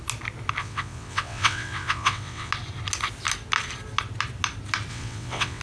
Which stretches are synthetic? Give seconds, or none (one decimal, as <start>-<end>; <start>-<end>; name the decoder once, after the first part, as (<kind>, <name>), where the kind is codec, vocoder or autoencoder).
0.6-2.5 (vocoder, WaveNeXt); 4.9-5.6